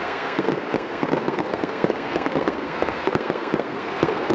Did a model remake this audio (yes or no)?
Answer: yes